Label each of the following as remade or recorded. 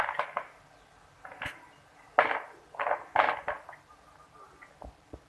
recorded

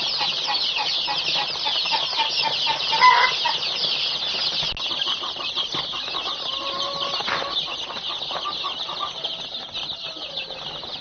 recorded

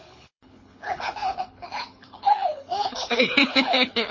remade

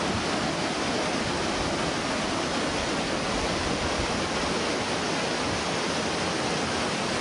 recorded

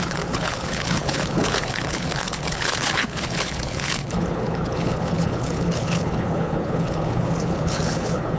remade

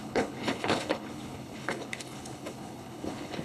remade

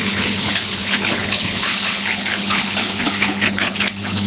remade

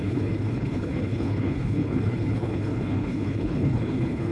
remade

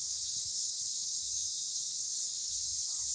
remade